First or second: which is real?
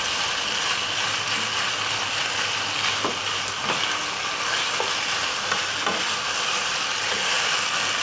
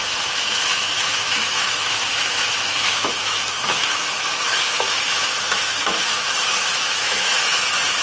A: first